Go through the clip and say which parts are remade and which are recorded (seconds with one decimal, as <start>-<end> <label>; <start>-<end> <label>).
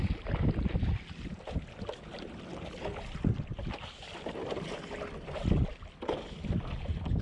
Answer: 0.0-7.2 recorded